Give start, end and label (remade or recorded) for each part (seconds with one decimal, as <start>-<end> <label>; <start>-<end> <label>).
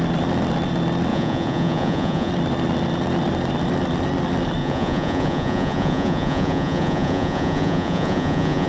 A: 0.0-1.1 recorded; 1.1-2.3 remade; 2.3-4.6 recorded; 4.6-8.7 remade